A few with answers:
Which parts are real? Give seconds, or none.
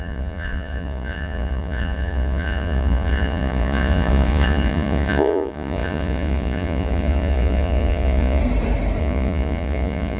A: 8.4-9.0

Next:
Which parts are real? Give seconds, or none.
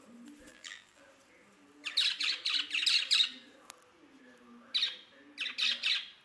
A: 0.0-0.5; 1.0-6.2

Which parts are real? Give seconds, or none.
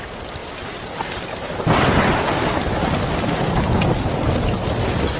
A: 0.0-5.2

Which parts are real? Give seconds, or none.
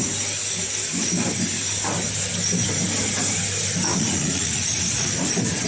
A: 0.0-3.9; 5.3-5.7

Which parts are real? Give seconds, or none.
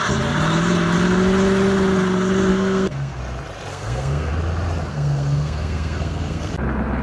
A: 0.0-2.5; 3.2-3.7; 4.3-4.9; 6.5-7.0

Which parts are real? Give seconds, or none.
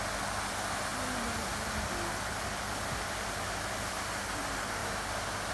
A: 0.0-5.5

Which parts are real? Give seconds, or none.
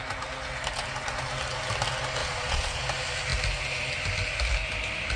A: 0.0-2.2; 2.8-5.2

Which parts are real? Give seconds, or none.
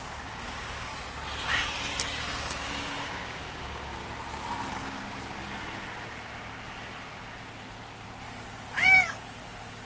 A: 0.9-2.2; 4.0-4.7; 5.4-9.9